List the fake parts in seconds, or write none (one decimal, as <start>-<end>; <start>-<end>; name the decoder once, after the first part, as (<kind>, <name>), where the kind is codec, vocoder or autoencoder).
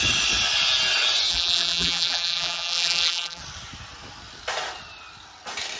1.3-3.4 (vocoder, BigVGAN v2)